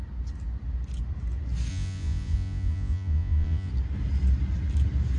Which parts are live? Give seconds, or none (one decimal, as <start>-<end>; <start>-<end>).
0.0-1.7; 3.7-5.2